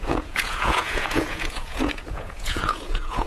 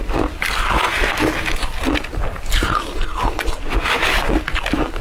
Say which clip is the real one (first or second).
second